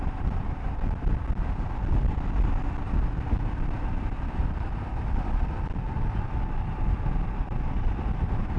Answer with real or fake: real